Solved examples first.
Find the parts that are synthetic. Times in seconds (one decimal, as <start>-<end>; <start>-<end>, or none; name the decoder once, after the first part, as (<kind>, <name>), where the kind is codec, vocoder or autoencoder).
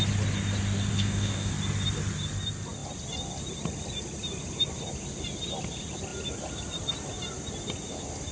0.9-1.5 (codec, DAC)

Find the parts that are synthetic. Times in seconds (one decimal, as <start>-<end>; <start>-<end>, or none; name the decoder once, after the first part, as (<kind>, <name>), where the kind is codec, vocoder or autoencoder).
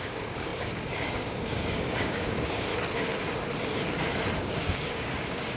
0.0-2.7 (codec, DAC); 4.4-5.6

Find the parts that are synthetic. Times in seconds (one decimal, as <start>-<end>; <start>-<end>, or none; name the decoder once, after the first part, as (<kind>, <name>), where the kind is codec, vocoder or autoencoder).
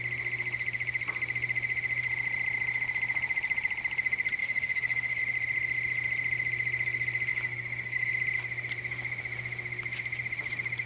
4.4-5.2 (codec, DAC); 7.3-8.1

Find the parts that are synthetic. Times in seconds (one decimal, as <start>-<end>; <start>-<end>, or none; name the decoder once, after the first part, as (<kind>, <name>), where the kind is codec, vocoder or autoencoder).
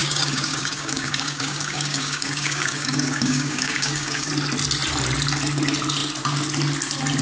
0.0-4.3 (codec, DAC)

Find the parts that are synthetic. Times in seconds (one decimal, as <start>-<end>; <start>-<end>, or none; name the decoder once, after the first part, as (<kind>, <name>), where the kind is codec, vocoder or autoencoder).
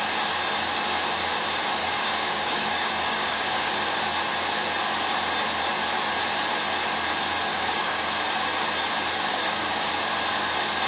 1.8-3.9 (codec, DAC); 7.5-8.1; 9.3-9.9